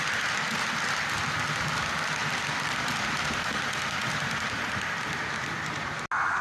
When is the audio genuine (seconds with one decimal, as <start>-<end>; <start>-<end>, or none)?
0.0-2.2; 6.0-6.4